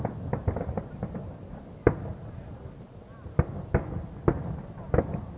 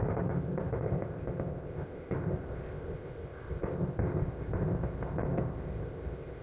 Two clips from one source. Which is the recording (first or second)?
first